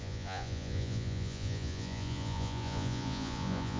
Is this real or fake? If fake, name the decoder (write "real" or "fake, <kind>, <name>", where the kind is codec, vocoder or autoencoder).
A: fake, vocoder, Vocos